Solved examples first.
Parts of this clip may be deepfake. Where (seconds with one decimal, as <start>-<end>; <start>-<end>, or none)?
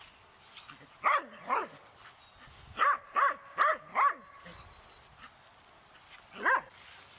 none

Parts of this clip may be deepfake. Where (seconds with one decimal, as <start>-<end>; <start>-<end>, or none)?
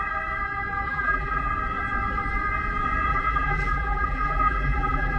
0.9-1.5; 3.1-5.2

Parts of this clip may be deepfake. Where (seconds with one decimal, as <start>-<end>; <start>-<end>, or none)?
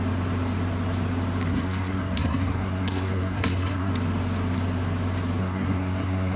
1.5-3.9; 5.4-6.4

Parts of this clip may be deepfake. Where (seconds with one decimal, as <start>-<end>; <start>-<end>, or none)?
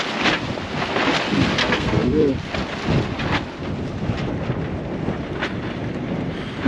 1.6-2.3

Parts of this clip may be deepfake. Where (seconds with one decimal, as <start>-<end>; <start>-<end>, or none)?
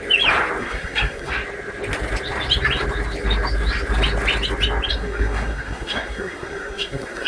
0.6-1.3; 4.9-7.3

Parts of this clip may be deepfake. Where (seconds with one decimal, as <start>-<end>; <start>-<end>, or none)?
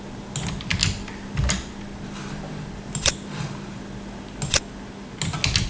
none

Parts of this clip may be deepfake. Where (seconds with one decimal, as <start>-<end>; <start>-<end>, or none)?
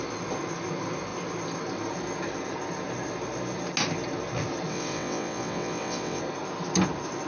4.7-6.2